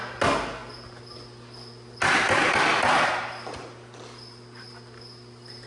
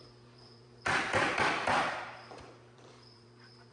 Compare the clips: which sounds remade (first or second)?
second